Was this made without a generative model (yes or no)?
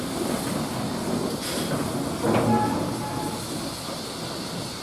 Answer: yes